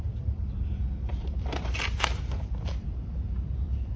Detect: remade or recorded remade